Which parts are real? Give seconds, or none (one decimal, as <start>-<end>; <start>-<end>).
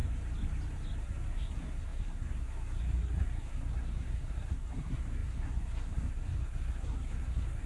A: 0.0-1.0